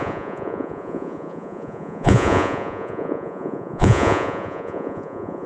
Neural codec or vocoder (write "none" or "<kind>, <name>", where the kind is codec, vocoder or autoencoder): vocoder, Vocos